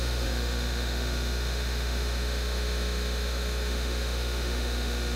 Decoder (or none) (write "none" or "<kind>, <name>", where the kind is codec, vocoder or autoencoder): autoencoder, DAC-VAE